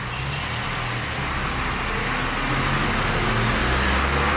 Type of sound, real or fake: real